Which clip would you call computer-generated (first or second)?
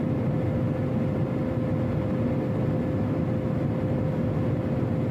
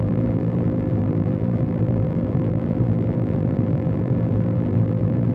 second